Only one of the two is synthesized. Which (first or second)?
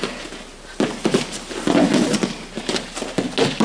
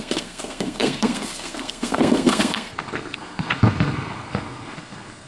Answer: second